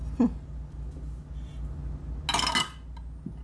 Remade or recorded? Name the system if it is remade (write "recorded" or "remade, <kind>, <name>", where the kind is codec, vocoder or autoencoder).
recorded